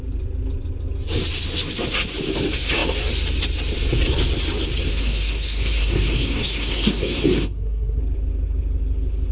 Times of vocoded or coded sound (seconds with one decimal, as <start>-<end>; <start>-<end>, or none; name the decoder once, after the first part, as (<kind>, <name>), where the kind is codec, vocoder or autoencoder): 4.9-8.0 (codec, SNAC)